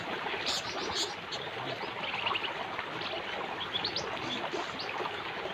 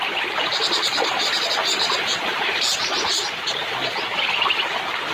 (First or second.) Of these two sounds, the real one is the first